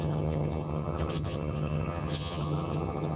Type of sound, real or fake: fake